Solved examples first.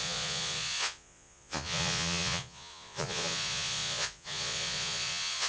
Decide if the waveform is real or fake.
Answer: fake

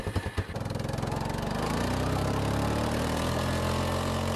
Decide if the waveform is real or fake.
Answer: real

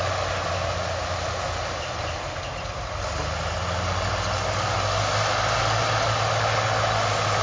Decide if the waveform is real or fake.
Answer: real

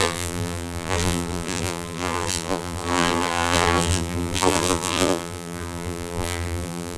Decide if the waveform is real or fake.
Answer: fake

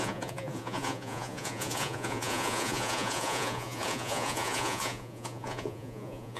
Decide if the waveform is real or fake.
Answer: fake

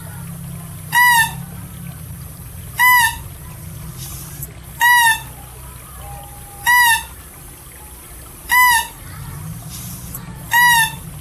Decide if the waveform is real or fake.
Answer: real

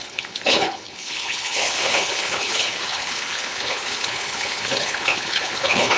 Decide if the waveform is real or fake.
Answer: fake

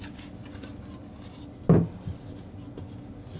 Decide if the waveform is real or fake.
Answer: real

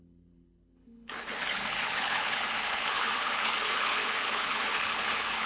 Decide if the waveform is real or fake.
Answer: fake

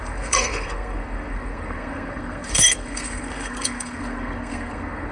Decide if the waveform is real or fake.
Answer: fake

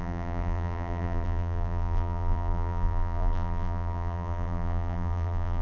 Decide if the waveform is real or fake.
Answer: fake